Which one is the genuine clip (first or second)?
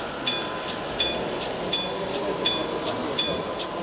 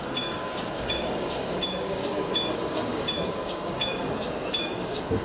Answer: first